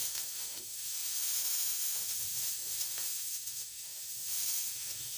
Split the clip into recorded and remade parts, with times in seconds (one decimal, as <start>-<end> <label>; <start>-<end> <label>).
0.0-5.2 remade